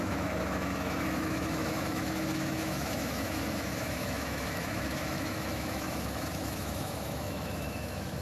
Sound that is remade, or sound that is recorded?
remade